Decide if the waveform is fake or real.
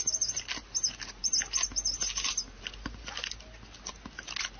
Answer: real